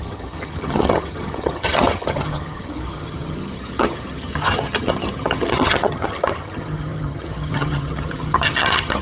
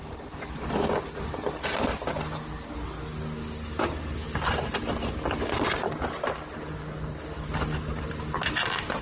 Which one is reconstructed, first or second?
first